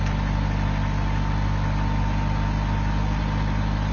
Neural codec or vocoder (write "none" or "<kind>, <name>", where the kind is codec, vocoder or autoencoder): none